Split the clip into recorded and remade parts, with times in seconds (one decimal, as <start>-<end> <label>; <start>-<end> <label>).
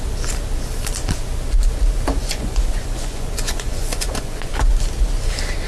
0.0-2.2 recorded; 2.2-4.5 remade; 4.5-5.7 recorded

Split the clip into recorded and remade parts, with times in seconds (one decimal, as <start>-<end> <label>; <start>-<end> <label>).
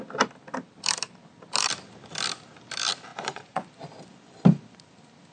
0.0-3.1 recorded; 3.1-3.7 remade; 3.7-5.3 recorded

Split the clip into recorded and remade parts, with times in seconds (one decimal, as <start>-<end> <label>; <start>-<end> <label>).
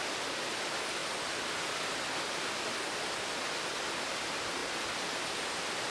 0.0-5.9 recorded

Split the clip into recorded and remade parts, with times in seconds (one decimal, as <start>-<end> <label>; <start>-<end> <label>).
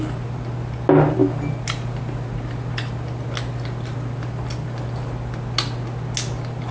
0.0-6.7 recorded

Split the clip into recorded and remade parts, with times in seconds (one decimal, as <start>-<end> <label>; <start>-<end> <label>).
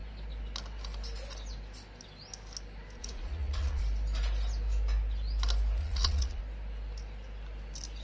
0.0-3.0 recorded; 3.0-3.8 remade; 3.8-5.8 recorded; 5.8-6.4 remade; 6.4-8.0 recorded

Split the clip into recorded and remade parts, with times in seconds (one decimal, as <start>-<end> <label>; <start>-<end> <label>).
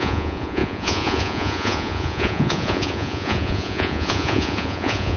0.0-5.2 remade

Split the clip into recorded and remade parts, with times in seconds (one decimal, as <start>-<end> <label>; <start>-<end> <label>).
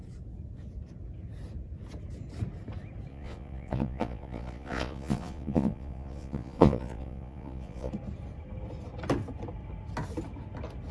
0.0-3.1 recorded; 3.1-7.9 remade; 7.9-10.9 recorded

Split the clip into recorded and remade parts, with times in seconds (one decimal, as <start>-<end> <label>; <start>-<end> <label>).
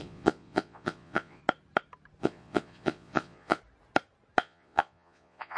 0.0-1.4 remade; 1.4-2.2 recorded; 2.2-3.6 remade; 3.6-4.4 recorded; 4.4-5.6 remade